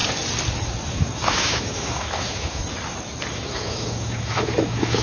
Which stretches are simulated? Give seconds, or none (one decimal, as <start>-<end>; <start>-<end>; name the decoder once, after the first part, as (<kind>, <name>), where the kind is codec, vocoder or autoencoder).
0.9-2.6 (autoencoder, DAC-VAE); 3.3-5.0